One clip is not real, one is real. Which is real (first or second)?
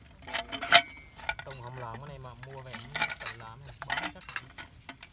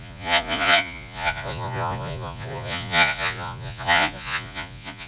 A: first